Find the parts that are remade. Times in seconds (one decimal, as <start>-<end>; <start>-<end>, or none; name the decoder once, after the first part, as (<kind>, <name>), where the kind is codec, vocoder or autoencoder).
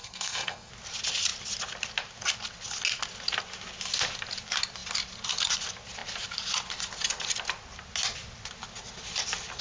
0.0-0.7 (codec, SNAC)